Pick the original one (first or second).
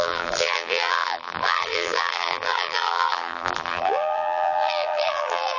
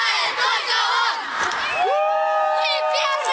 second